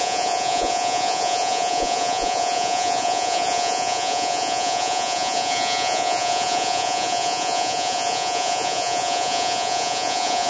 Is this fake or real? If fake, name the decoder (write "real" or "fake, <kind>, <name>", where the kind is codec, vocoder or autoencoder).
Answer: fake, vocoder, Vocos